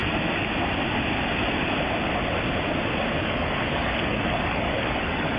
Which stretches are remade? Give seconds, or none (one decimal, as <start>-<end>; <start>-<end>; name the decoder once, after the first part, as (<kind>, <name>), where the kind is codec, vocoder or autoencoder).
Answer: 3.2-5.4 (codec, DAC)